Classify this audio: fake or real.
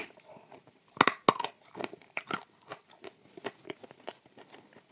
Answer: real